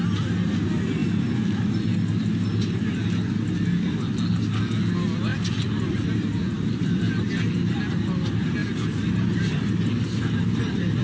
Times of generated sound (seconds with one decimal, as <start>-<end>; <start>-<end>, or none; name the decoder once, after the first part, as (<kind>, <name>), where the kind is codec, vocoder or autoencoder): 5.3-7.0 (vocoder, BigVGAN v2); 8.6-11.0

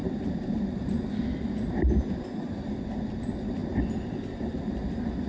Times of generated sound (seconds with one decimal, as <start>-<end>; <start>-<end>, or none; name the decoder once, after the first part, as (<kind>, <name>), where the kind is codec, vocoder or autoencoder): 0.0-3.6 (vocoder, BigVGAN v2)

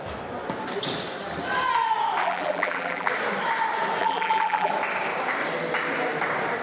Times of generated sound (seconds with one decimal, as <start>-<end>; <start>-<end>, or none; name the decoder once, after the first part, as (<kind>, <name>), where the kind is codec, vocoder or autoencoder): 2.2-3.1 (vocoder, BigVGAN v2); 4.0-4.7

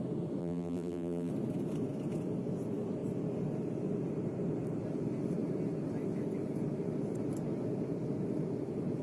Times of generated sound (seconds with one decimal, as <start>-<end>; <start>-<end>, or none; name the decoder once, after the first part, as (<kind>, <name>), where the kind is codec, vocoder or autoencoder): 0.4-1.3 (vocoder, BigVGAN v2)

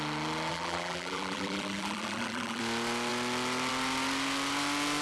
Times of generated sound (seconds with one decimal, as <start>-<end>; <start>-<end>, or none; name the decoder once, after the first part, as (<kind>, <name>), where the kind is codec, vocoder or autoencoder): 0.5-2.6 (vocoder, BigVGAN v2)

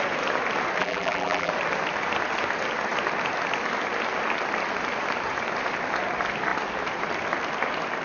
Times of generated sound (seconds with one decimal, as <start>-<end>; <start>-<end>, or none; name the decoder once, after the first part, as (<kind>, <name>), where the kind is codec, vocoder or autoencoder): 0.8-1.5 (vocoder, BigVGAN v2)